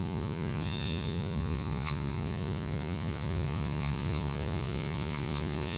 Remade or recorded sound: remade